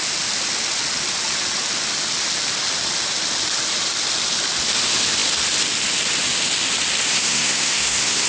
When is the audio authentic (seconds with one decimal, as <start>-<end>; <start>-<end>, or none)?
0.0-7.1

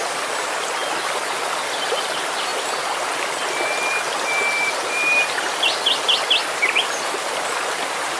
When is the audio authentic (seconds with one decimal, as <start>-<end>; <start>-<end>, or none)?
0.0-8.2

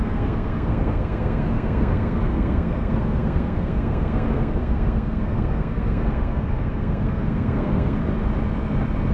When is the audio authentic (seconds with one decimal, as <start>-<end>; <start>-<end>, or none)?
8.0-9.1

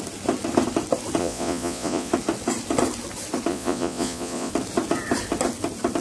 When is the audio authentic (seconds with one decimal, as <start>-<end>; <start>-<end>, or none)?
0.0-1.2; 2.1-3.5; 4.5-6.0

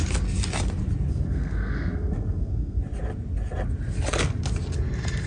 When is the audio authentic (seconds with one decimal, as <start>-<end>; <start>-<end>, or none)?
0.0-1.1; 2.8-5.3

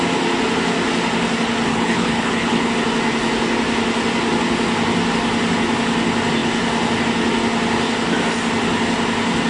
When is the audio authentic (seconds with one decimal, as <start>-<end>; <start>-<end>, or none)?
0.0-1.7; 2.7-9.5

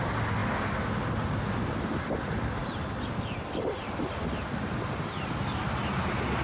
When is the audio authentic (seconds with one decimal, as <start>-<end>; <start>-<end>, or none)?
0.0-6.4